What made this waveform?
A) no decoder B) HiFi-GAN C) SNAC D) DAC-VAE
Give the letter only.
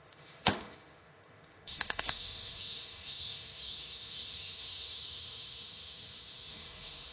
D